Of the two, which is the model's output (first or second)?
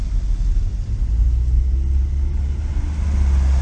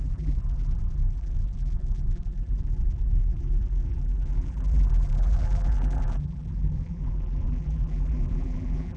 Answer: second